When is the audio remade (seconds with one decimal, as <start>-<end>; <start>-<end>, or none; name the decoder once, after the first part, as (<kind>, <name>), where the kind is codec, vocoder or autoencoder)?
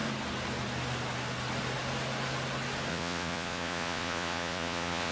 2.9-5.1 (vocoder, Vocos)